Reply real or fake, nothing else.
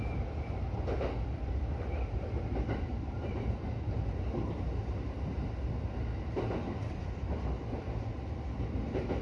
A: real